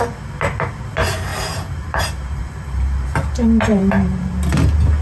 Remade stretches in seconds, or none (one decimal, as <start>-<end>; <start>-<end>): 1.3-3.3; 3.7-4.3